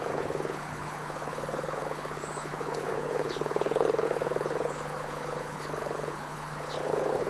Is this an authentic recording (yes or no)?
no